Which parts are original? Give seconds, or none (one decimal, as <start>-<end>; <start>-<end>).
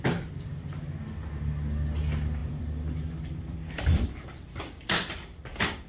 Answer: 0.0-2.4